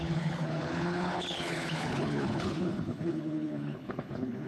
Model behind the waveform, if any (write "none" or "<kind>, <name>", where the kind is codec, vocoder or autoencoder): codec, HILCodec